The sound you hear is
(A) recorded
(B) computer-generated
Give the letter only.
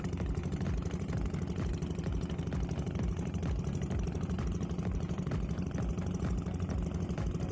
A